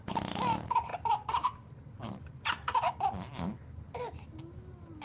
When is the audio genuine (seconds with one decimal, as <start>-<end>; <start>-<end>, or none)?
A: 0.0-5.0